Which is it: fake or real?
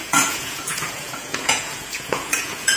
fake